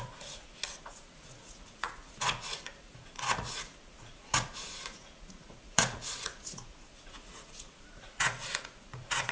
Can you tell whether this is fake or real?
fake